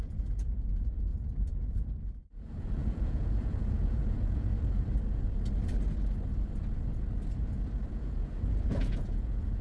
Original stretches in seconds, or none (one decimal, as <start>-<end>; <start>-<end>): 1.1-2.1; 4.5-7.9